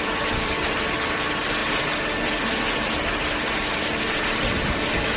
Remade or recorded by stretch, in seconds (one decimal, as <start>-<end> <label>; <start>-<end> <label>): 0.0-1.6 remade; 1.6-4.0 recorded; 4.0-5.2 remade